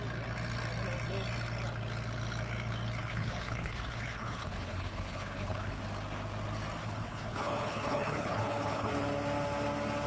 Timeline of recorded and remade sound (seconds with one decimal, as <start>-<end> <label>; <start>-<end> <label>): 0.0-3.0 recorded; 3.0-5.8 remade; 5.8-6.8 recorded; 6.8-8.9 remade; 8.9-10.1 recorded